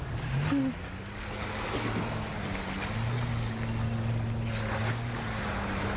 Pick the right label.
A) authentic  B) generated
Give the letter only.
A